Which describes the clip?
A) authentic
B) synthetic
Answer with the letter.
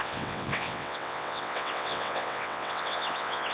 B